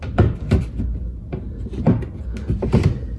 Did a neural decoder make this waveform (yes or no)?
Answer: no